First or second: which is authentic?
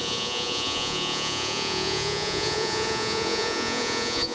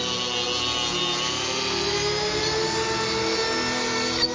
second